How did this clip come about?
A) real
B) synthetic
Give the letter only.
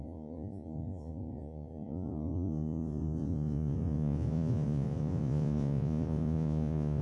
B